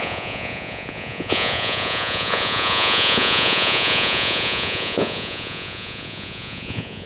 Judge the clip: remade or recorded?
remade